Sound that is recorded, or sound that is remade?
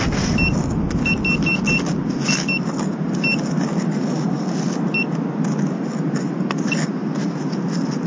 recorded